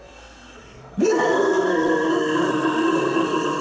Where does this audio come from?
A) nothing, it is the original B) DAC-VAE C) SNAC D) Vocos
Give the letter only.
C